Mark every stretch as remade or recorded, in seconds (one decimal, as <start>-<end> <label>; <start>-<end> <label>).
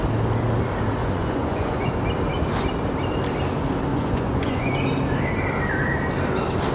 0.0-1.0 recorded; 1.0-1.9 remade; 1.9-3.9 recorded; 3.9-4.7 remade; 4.7-6.7 recorded